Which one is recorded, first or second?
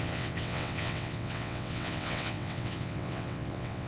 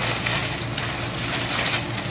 second